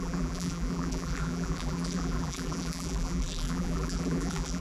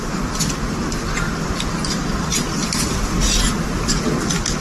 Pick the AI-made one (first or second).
first